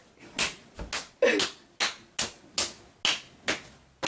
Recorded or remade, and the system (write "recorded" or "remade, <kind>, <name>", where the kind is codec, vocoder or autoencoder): recorded